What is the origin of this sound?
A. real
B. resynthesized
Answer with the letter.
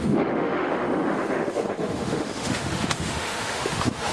B